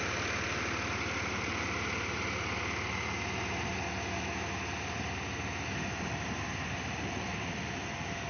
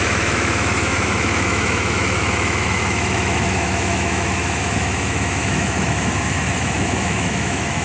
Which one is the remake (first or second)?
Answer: second